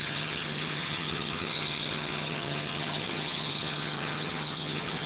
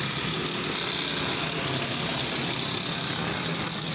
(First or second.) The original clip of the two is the second